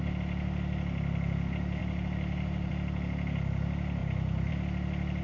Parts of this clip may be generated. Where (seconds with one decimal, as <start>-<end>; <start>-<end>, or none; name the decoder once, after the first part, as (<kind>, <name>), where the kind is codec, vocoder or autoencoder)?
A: 1.8-2.7 (vocoder, BigVGAN v2)